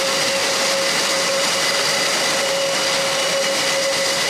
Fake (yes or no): no